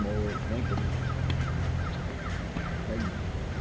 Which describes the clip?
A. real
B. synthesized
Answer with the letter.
A